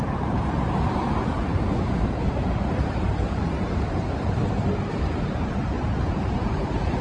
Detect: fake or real fake